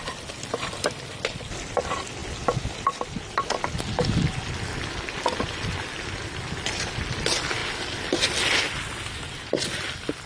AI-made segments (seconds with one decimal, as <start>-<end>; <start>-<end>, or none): none